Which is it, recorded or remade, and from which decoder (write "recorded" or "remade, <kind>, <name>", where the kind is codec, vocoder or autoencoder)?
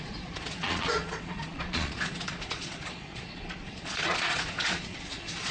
remade, vocoder, Vocos